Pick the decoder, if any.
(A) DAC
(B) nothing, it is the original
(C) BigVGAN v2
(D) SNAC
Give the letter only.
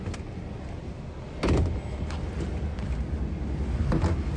B